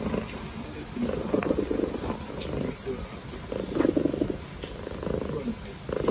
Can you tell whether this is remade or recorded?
recorded